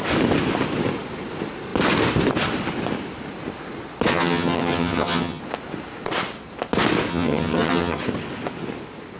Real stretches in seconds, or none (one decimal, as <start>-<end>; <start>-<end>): 0.0-4.1; 5.4-7.1; 8.0-9.2